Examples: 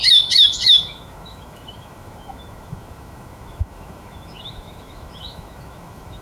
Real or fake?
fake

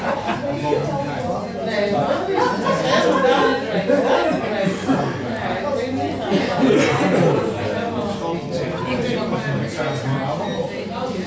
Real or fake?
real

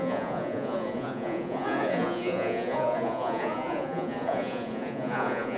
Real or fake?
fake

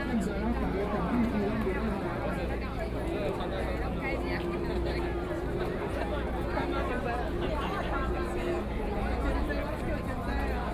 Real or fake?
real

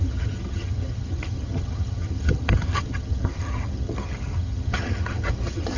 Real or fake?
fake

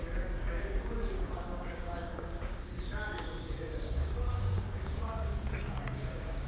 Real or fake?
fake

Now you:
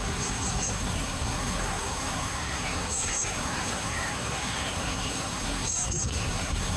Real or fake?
fake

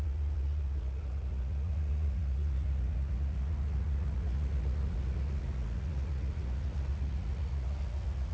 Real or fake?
fake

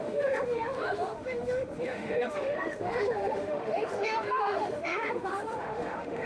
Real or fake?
fake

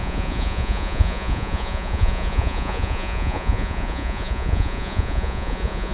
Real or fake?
fake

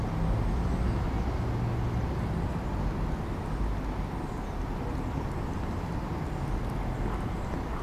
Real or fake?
real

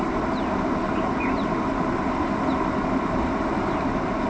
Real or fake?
real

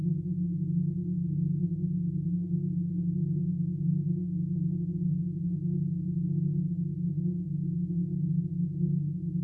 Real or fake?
real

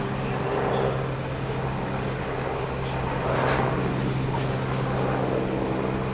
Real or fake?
real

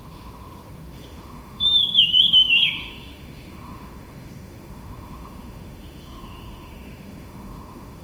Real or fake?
fake